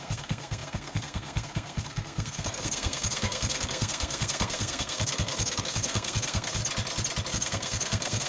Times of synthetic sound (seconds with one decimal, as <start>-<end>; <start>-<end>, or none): 0.0-6.6; 7.3-8.3